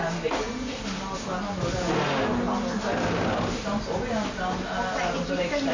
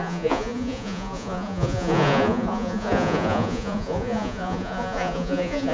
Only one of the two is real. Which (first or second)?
first